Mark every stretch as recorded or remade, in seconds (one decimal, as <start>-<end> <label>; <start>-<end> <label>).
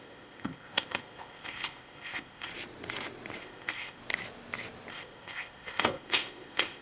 0.0-2.5 remade; 2.5-3.4 recorded; 3.4-4.0 remade; 4.0-4.9 recorded; 4.9-6.8 remade